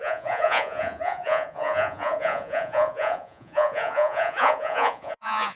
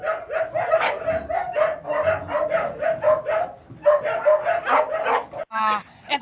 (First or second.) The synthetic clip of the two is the first